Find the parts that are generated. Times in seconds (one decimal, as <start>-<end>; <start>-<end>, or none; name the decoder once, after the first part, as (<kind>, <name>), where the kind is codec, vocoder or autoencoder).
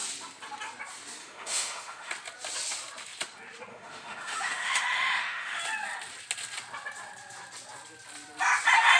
1.2-2.1 (autoencoder, DAC-VAE); 3.7-5.6